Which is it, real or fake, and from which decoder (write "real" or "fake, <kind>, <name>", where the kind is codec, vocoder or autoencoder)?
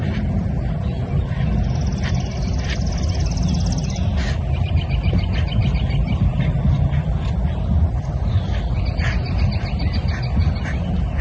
real